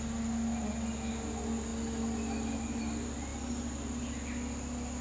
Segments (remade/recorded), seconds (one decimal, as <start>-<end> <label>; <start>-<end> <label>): 0.0-5.0 recorded